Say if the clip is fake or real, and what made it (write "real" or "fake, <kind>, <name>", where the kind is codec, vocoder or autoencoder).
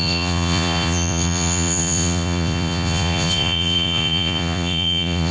fake, vocoder, Vocos